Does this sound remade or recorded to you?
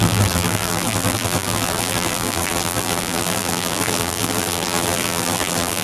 remade